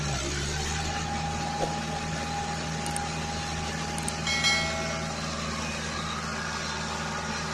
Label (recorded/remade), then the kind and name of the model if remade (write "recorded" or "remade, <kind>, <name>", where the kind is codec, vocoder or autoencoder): recorded